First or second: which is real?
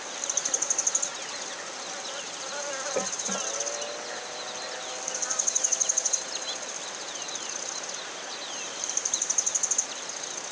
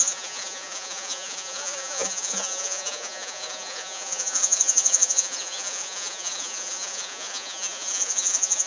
first